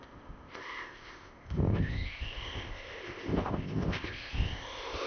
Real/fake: fake